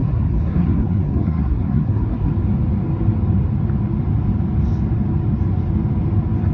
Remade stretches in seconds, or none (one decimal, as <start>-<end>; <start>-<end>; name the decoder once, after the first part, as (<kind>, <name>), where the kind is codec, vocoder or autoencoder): 0.0-2.3 (codec, SNAC)